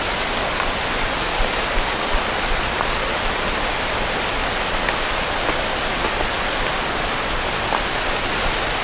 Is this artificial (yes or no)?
no